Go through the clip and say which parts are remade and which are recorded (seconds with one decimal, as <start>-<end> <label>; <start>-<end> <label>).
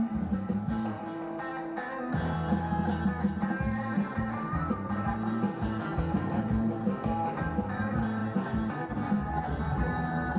0.0-10.4 remade